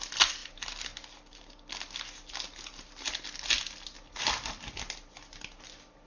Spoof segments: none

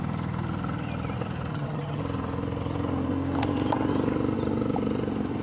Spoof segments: 1.5-2.0 (vocoder, HiFi-GAN)

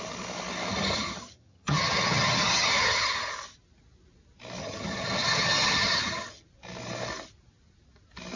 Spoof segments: 0.7-3.3 (vocoder, HiFi-GAN); 4.6-6.4

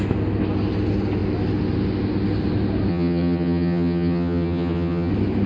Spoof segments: 2.9-5.1 (vocoder, HiFi-GAN)